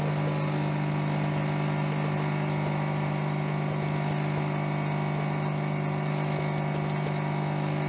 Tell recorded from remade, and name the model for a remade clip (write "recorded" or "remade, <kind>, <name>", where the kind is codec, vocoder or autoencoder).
recorded